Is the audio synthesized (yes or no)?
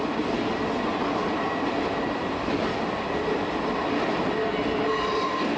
no